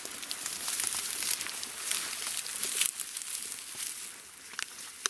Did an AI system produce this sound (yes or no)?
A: no